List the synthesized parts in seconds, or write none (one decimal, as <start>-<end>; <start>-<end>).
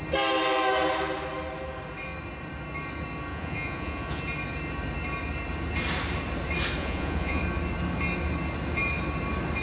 3.3-4.2; 6.8-7.4